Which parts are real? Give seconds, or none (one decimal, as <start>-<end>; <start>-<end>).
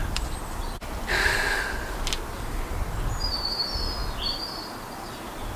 0.0-5.6